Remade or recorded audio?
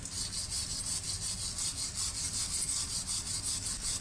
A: recorded